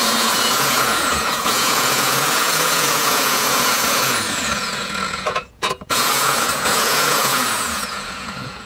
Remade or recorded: remade